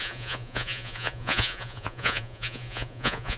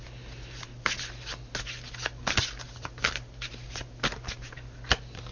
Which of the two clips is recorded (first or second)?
second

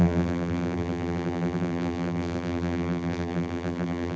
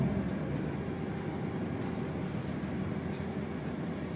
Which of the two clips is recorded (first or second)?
second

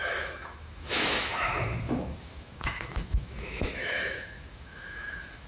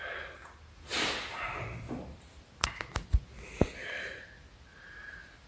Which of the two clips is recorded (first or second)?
second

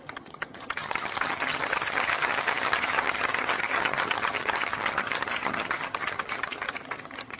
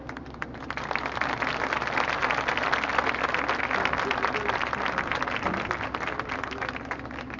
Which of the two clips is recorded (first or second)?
second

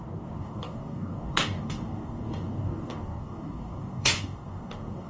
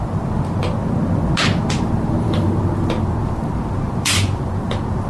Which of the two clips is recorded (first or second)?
second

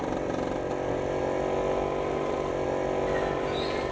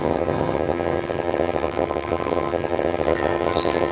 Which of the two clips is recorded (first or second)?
first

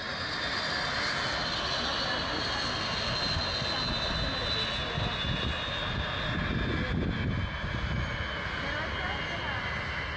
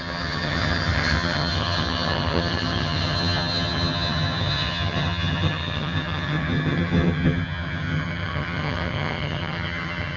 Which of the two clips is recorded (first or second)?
first